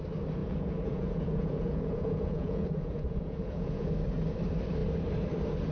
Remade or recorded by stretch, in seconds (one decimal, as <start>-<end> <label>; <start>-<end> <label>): 0.0-0.4 recorded; 0.4-3.8 remade; 3.8-5.7 recorded